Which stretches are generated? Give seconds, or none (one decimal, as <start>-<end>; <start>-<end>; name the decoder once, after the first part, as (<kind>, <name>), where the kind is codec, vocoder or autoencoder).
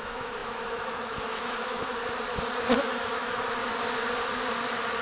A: 0.0-2.0 (autoencoder, DAC-VAE); 2.8-3.6